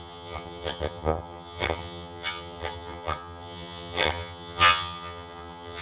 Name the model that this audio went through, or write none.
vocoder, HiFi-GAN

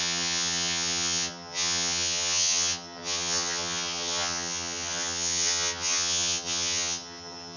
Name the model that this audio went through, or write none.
vocoder, HiFi-GAN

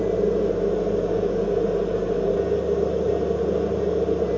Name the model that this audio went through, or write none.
none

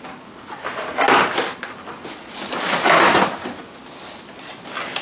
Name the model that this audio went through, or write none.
none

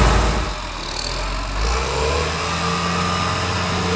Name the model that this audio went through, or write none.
none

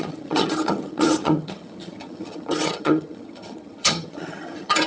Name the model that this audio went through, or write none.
vocoder, HiFi-GAN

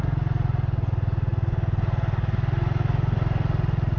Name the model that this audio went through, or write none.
none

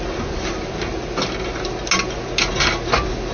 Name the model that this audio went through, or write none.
none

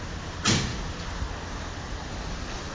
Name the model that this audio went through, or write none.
none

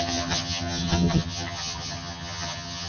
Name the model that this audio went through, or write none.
vocoder, HiFi-GAN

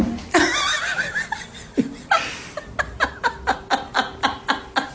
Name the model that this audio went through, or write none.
none